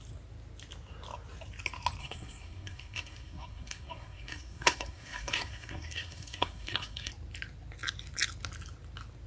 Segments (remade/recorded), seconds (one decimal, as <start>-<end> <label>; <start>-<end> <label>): 0.0-2.0 recorded; 2.0-7.1 remade; 7.1-9.3 recorded